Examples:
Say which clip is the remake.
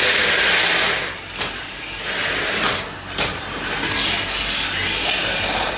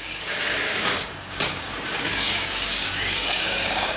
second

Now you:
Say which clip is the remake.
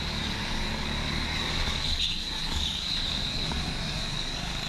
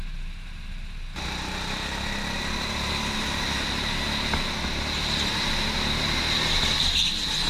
first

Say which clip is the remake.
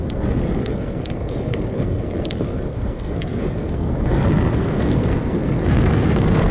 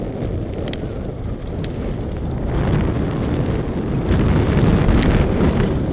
first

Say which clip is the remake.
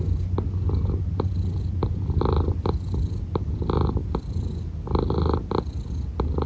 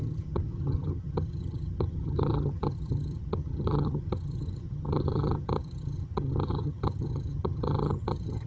second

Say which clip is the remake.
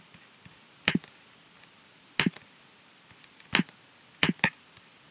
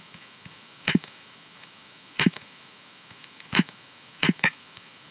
second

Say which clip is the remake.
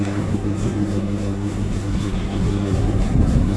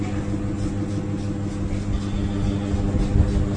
first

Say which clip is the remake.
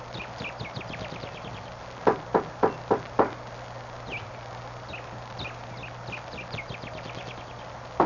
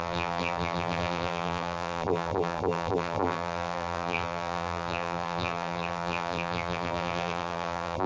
second